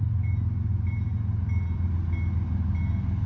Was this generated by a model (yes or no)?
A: no